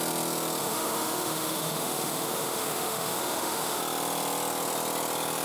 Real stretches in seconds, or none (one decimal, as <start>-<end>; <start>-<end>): 0.0-0.6; 3.8-5.4